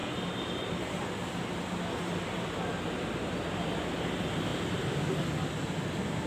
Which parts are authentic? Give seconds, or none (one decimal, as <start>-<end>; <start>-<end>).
0.0-6.3